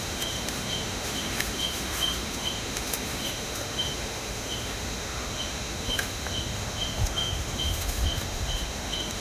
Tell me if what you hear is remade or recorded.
remade